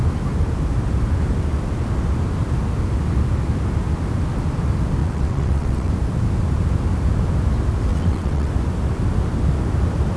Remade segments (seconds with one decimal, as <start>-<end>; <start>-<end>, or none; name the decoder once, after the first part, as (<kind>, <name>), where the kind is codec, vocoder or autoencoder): 5.0-5.9 (vocoder, WaveNeXt); 7.9-8.5